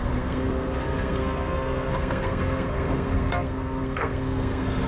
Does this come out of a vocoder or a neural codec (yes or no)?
yes